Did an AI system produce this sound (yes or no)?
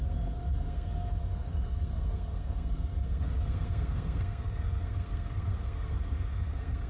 yes